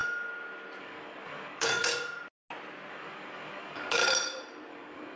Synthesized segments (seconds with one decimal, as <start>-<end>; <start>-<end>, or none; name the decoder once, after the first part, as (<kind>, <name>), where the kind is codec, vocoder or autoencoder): 0.8-1.9 (codec, DAC); 2.9-4.0; 4.7-5.2